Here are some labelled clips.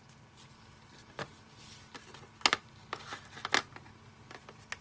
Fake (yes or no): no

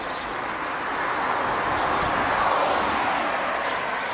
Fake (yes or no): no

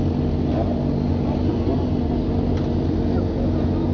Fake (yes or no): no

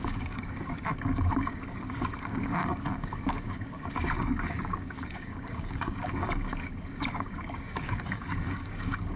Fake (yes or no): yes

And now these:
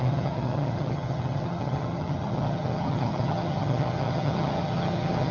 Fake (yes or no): yes